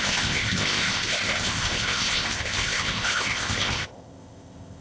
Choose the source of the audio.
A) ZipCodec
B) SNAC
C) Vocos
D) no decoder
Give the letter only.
A